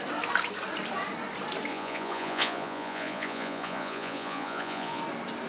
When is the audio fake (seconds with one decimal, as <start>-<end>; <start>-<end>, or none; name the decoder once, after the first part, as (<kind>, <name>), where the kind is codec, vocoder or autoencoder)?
1.7-5.0 (vocoder, Vocos)